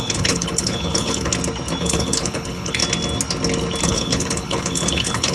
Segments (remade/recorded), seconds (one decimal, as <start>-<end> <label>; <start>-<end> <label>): 0.0-1.3 remade; 1.3-1.8 recorded; 1.8-2.8 remade; 2.8-3.8 recorded; 3.8-5.3 remade